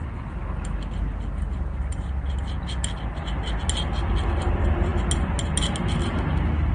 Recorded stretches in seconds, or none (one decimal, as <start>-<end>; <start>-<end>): 0.0-6.7